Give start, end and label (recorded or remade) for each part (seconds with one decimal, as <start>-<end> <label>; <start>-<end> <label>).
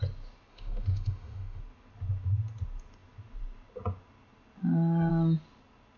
0.0-0.5 recorded; 0.5-1.6 remade; 1.6-6.0 recorded